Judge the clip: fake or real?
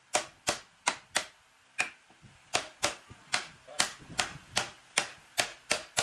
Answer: real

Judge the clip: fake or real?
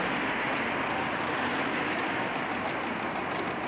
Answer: real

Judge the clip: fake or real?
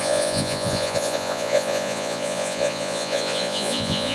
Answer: fake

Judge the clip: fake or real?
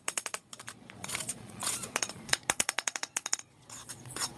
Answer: fake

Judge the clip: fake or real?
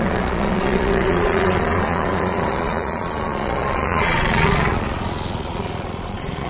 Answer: fake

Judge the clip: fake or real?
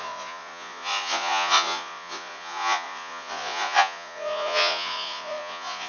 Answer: fake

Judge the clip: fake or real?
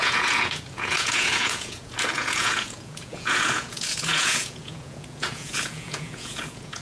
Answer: fake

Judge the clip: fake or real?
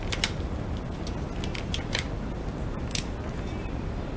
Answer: real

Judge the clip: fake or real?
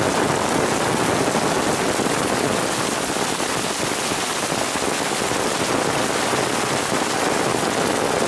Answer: real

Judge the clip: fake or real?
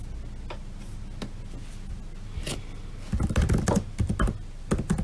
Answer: real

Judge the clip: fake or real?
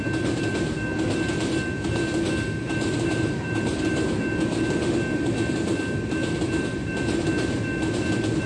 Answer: real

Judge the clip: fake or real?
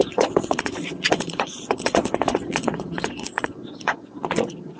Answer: fake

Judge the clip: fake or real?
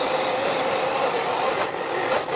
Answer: real